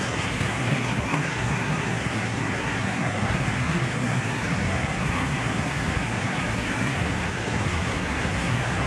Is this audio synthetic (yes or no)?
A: yes